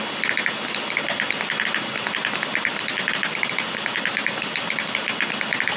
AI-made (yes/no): no